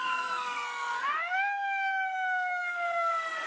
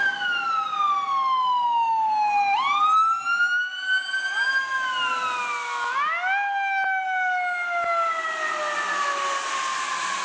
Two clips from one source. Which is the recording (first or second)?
second